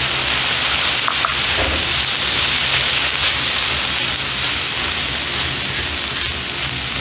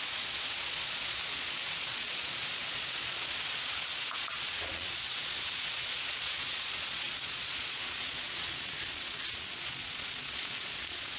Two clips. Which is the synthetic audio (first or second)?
second